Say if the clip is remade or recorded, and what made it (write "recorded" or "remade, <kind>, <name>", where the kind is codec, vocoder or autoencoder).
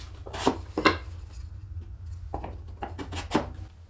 recorded